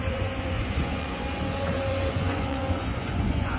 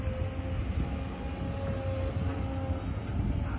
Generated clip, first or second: first